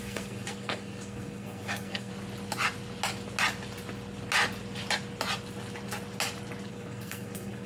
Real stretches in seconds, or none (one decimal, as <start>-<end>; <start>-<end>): 2.1-6.7